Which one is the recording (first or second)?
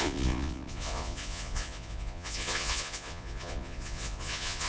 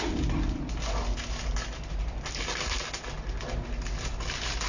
second